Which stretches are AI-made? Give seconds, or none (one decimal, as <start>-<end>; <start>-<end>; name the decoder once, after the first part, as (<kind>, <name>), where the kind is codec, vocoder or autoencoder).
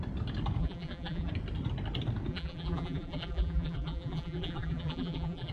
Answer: 0.6-1.3 (vocoder, BigVGAN v2); 2.3-5.5